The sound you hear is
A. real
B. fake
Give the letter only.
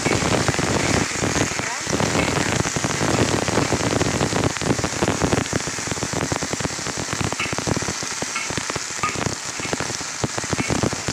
A